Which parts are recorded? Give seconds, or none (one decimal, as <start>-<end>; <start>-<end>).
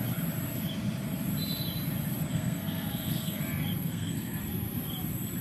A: 0.0-2.3; 3.4-3.8; 4.4-5.4